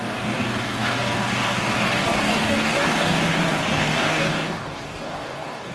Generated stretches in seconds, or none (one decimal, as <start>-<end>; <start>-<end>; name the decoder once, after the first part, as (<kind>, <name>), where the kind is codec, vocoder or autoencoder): 0.0-5.7 (codec, DAC)